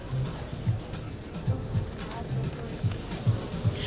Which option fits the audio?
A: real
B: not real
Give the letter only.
A